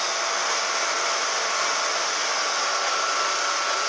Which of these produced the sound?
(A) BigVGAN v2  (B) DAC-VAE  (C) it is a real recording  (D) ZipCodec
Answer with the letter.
C